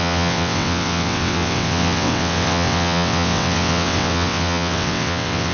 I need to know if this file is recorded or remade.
remade